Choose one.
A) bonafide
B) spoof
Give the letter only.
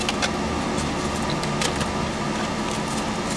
A